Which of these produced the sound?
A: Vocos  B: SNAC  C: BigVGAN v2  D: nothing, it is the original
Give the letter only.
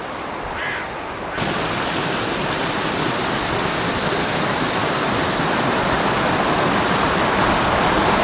D